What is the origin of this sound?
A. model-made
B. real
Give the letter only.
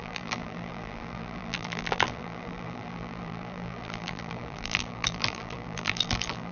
A